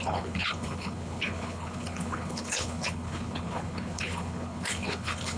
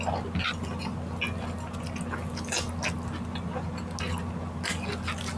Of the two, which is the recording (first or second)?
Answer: second